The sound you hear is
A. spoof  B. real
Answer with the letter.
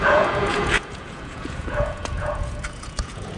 A